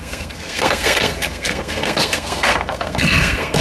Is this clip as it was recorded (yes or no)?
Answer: no